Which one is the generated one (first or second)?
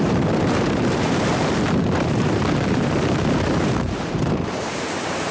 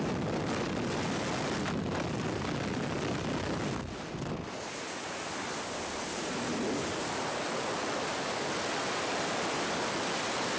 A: first